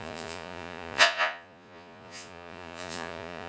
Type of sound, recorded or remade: remade